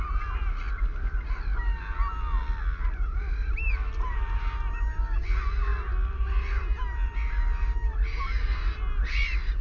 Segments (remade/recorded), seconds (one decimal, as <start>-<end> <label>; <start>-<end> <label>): 0.0-9.6 recorded